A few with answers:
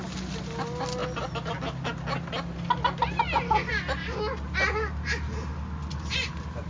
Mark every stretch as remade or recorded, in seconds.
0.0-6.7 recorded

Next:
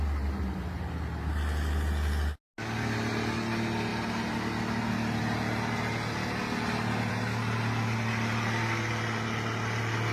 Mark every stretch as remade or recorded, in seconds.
0.0-10.1 recorded

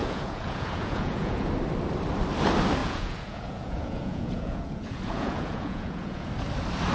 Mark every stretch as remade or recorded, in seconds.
0.0-1.5 remade; 1.5-2.8 recorded; 2.8-6.3 remade; 6.3-6.9 recorded

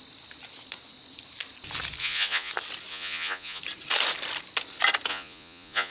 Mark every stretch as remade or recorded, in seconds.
0.0-2.0 recorded; 2.0-2.5 remade; 2.5-2.9 recorded; 2.9-3.6 remade; 3.6-5.1 recorded; 5.1-5.9 remade

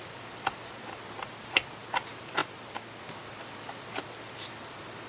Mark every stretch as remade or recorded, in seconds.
0.0-5.1 recorded

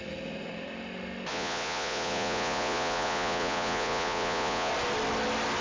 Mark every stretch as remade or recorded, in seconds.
0.0-1.3 recorded; 1.3-4.7 remade; 4.7-5.6 recorded

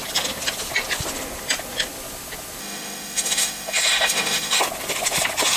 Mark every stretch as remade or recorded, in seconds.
0.0-2.6 recorded; 2.6-4.6 remade; 4.6-5.6 recorded